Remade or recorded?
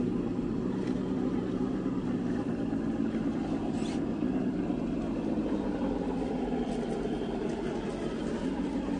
recorded